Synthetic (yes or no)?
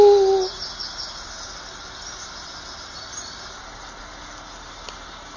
no